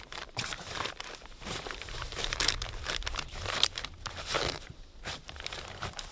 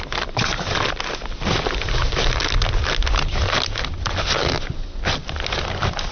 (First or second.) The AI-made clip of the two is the first